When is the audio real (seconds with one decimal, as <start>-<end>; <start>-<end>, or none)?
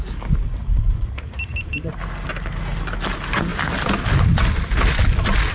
0.0-0.5; 2.1-5.5